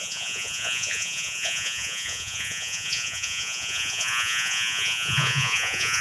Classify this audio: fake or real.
fake